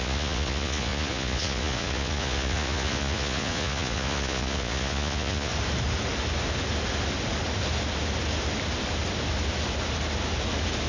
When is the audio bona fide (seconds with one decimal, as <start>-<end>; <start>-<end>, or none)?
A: 5.5-10.9